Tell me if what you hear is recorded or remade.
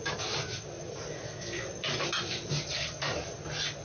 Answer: recorded